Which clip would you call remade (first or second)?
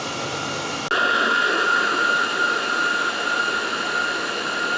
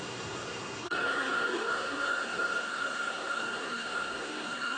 second